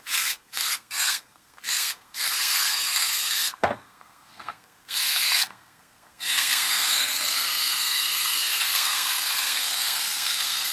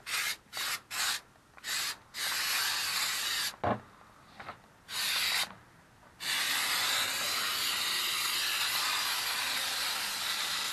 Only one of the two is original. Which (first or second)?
second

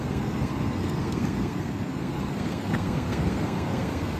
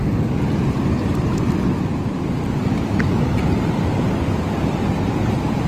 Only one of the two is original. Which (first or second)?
second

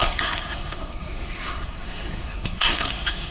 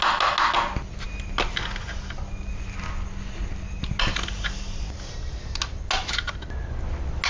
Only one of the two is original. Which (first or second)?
second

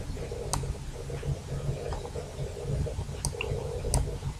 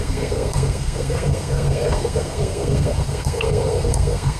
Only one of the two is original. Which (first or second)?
first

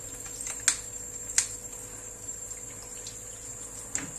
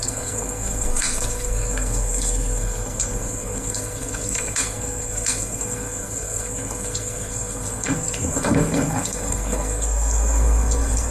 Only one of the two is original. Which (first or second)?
first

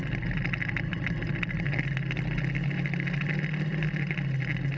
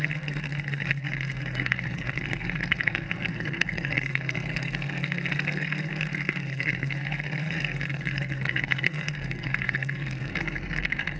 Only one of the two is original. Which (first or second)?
first